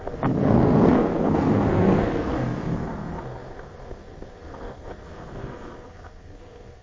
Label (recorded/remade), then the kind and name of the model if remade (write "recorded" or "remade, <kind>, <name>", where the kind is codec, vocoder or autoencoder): remade, codec, SNAC